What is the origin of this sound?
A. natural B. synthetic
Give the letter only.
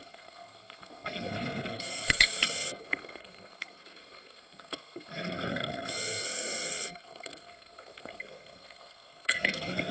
B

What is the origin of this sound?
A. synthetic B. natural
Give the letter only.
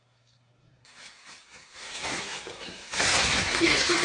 A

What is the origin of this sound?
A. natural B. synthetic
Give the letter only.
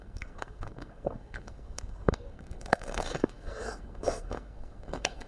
B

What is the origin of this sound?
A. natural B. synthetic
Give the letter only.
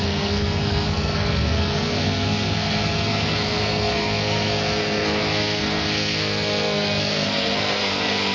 B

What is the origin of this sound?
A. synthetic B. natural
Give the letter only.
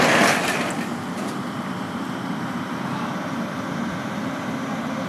B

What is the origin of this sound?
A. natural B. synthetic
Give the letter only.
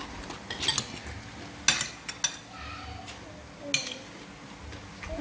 A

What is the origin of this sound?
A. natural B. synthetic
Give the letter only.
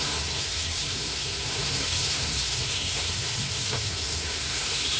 B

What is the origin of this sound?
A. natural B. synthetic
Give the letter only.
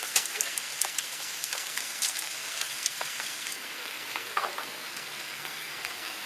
B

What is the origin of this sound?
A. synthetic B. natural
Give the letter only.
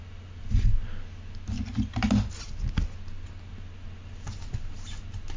B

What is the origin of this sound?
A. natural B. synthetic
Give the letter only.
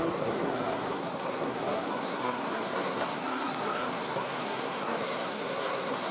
B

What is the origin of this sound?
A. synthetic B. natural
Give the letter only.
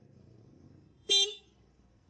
A